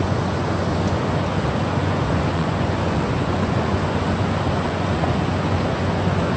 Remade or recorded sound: remade